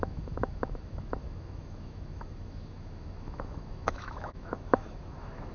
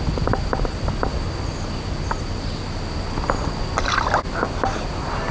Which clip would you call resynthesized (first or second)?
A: first